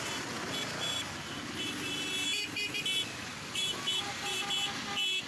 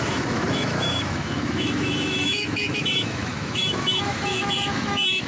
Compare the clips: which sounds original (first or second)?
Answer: first